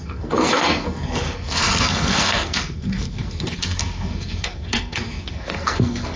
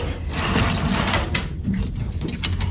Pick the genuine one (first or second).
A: second